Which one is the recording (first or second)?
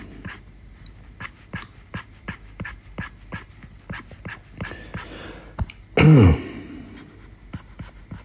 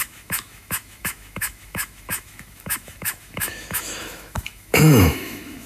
first